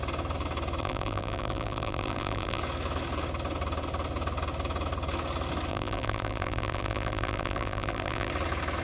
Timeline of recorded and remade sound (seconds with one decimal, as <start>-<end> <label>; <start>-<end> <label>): 0.0-0.8 recorded; 0.8-2.6 remade; 2.6-5.7 recorded; 5.7-8.3 remade; 8.3-8.8 recorded